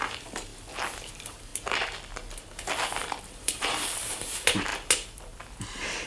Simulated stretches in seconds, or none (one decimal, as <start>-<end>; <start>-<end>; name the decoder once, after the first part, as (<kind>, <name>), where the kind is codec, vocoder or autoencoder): 0.0-0.5 (vocoder, BigVGAN v2); 1.1-1.5; 3.2-4.7; 5.6-6.1